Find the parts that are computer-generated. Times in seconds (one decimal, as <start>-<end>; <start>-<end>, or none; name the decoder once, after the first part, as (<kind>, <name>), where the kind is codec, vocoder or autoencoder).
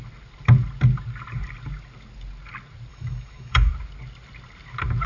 2.9-3.7 (autoencoder, DAC-VAE)